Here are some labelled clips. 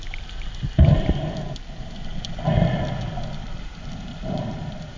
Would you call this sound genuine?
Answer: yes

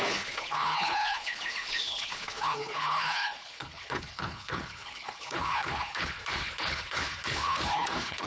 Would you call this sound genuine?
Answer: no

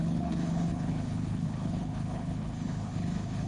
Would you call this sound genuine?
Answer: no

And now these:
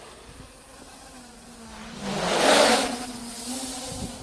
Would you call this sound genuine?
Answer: yes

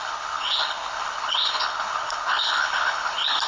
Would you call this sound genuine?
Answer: no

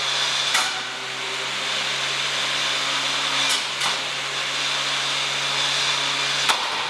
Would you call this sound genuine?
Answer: yes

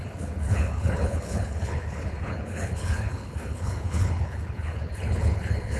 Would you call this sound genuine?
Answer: no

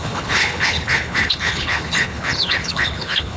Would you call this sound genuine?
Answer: no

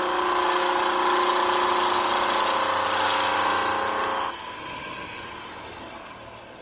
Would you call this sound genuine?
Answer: yes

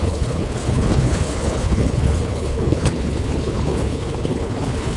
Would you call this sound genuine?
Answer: no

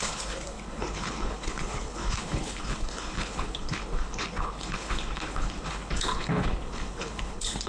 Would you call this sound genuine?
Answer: no